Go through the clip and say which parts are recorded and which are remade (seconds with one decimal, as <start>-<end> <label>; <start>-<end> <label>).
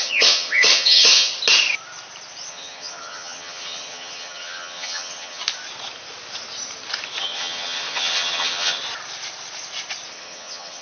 0.0-1.3 remade; 1.3-2.5 recorded; 2.5-5.4 remade; 5.4-7.2 recorded; 7.2-8.8 remade; 8.8-10.1 recorded; 10.1-10.8 remade